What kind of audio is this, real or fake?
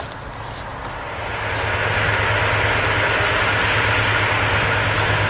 real